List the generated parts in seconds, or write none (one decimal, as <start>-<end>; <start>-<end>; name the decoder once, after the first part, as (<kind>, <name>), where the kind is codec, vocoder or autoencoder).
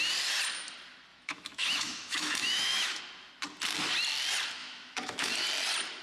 1.1-3.0 (autoencoder, DAC-VAE); 4.6-5.3